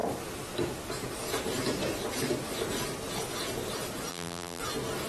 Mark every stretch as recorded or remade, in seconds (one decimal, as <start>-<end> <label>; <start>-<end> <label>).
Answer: 0.0-4.1 recorded; 4.1-4.6 remade; 4.6-5.1 recorded